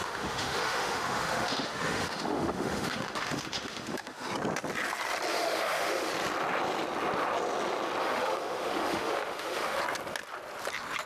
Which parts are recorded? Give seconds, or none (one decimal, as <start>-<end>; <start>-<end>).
4.3-5.3; 6.1-8.0; 9.8-11.1